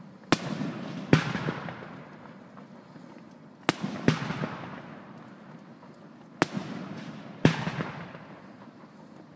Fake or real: real